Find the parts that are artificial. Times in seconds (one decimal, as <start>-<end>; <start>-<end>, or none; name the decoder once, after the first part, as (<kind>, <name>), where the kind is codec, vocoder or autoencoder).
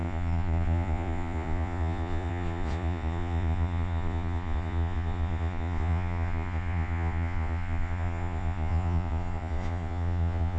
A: 0.0-10.6 (vocoder, Vocos)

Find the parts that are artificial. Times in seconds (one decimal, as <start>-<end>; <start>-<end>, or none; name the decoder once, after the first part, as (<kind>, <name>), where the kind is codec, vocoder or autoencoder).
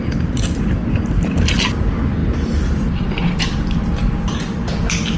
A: none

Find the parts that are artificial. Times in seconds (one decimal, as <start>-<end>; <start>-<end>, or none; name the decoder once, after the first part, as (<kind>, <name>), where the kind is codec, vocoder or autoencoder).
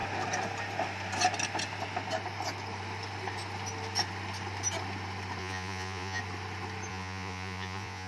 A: 5.4-6.2 (vocoder, Vocos); 6.9-8.1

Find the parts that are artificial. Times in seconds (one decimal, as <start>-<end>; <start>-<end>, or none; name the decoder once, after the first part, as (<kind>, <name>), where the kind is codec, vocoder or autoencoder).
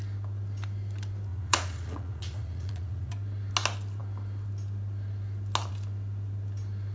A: 1.3-3.1 (vocoder, Vocos)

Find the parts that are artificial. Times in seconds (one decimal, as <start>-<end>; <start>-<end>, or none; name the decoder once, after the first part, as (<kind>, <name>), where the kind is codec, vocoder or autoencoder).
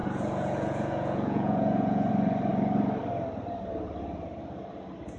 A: 0.0-2.1 (vocoder, Vocos)